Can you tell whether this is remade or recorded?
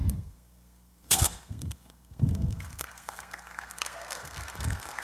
remade